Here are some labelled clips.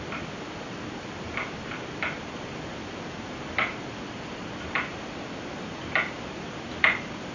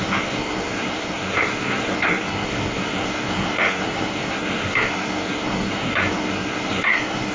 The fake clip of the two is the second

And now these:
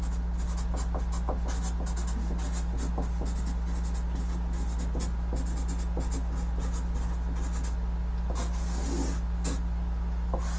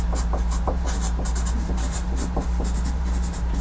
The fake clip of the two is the second